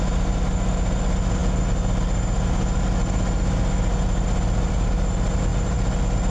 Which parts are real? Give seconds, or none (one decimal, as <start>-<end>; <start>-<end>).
0.0-5.5